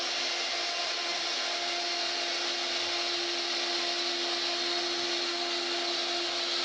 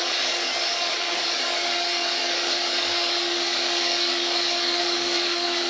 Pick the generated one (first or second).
second